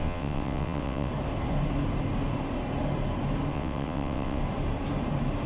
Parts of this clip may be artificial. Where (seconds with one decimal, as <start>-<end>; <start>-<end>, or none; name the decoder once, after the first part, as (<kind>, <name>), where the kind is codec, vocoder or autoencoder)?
0.0-1.1 (vocoder, WaveNeXt); 3.5-4.4